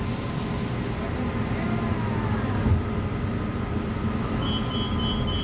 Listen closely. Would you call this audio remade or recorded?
recorded